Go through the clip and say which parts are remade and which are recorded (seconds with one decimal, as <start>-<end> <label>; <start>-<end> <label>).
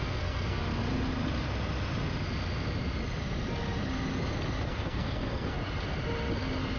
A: 0.0-0.6 remade; 0.6-4.7 recorded; 4.7-5.6 remade; 5.6-6.8 recorded